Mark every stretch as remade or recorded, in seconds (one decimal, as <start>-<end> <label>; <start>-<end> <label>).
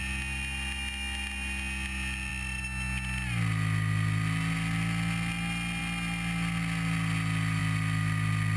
0.0-8.6 recorded